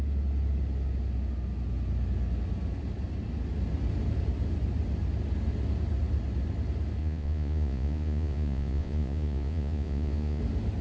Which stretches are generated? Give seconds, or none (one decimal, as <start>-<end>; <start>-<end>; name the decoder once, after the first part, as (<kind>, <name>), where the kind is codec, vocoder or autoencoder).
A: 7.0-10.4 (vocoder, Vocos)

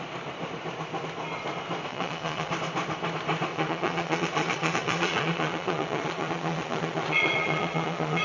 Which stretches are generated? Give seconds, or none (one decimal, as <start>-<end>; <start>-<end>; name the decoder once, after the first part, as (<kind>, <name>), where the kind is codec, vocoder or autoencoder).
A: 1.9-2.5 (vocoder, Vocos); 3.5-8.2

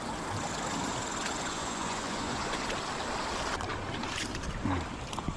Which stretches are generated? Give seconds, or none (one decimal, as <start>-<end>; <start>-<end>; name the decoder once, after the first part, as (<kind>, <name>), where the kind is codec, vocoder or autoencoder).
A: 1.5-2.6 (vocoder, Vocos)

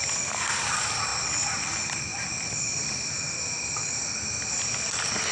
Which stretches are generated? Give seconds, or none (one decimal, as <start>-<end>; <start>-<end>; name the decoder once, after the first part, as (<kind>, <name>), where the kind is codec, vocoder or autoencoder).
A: none

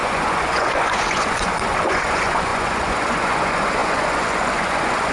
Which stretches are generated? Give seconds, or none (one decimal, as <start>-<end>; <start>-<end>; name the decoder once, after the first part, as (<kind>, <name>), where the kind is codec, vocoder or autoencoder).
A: 0.0-5.1 (vocoder, Vocos)

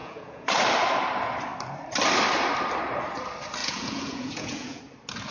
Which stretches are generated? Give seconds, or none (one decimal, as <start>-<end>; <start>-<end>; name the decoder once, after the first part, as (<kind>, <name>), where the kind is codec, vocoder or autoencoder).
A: 0.0-0.5 (vocoder, Vocos); 3.6-4.8

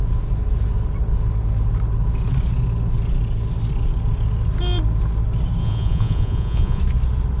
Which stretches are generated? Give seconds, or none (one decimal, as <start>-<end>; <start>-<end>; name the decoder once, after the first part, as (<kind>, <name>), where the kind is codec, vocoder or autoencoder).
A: 5.6-6.8 (vocoder, Vocos)